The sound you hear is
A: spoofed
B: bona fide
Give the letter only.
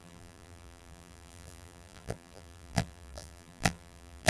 A